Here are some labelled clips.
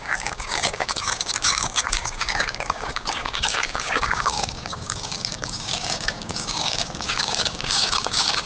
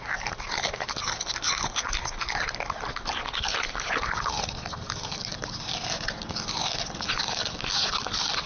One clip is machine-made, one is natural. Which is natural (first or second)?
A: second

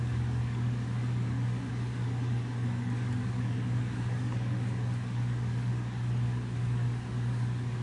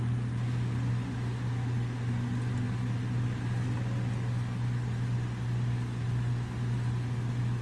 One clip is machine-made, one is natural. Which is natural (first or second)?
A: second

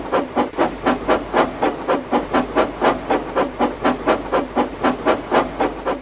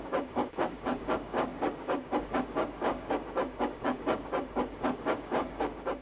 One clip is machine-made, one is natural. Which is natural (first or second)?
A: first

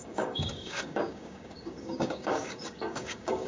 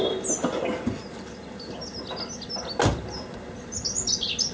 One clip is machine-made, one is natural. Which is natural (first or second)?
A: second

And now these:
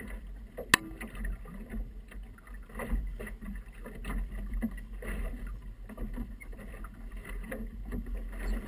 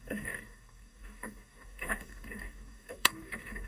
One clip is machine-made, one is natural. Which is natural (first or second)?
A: first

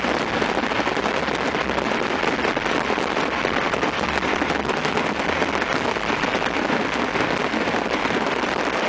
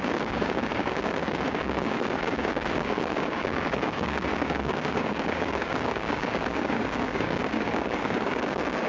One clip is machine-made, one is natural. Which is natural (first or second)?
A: first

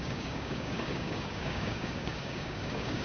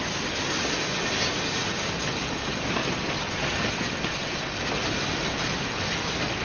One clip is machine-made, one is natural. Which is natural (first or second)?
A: second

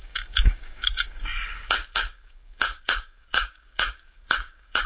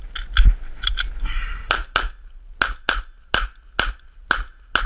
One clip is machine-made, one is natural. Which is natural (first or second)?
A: second